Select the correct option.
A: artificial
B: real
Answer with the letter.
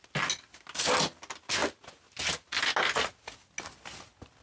B